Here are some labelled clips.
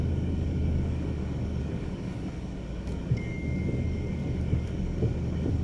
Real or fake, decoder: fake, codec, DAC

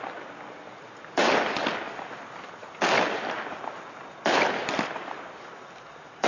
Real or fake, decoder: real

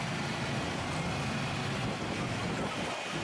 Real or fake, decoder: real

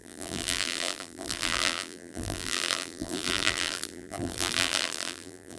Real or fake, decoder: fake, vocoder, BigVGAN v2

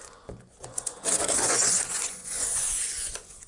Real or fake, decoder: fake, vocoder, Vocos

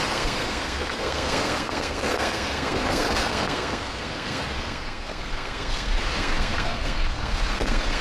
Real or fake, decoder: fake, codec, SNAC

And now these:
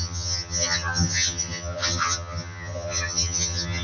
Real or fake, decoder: fake, vocoder, HiFi-GAN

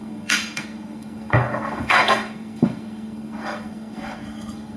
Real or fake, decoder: fake, codec, SNAC